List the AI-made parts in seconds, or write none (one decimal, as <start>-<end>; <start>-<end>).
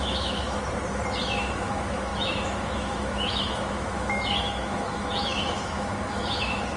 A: 0.0-0.6; 1.4-6.8